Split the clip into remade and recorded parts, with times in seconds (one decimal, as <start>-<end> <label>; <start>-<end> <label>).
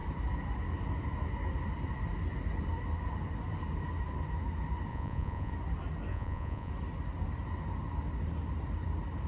0.0-4.9 recorded; 4.9-5.5 remade; 5.5-6.1 recorded; 6.1-6.7 remade; 6.7-9.3 recorded